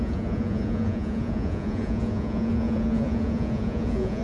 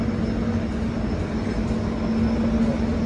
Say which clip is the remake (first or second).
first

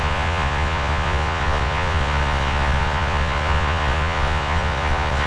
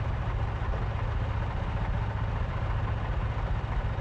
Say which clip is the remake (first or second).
first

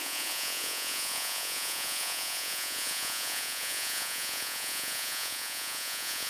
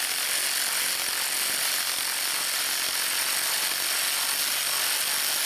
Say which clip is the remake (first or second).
first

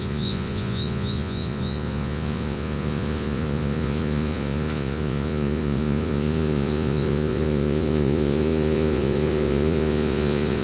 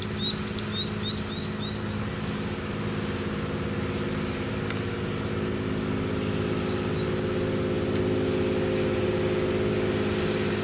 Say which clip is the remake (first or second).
first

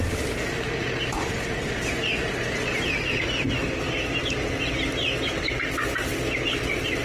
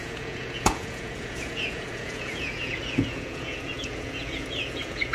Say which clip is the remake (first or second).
second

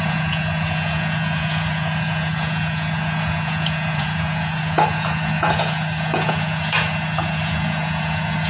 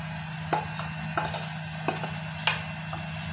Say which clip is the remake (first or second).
first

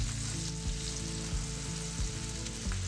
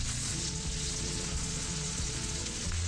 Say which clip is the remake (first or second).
second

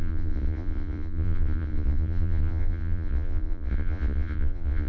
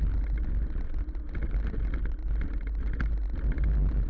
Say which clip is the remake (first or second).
first